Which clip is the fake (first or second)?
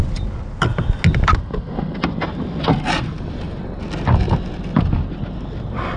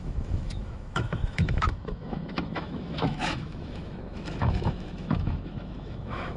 second